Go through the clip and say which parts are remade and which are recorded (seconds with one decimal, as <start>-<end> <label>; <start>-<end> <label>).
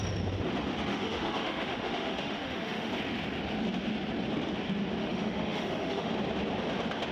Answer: 0.0-0.9 recorded; 0.9-2.9 remade; 2.9-5.0 recorded; 5.0-6.1 remade; 6.1-7.1 recorded